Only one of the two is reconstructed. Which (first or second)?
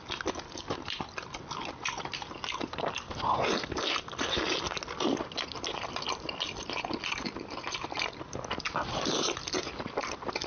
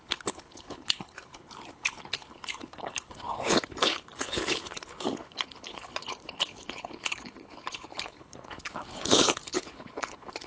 second